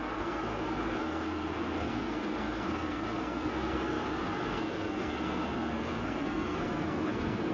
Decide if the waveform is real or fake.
fake